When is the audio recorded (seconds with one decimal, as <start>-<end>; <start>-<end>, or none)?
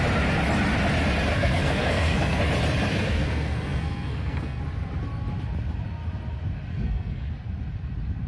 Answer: 0.0-1.3; 2.4-2.9; 4.6-6.7; 7.3-8.3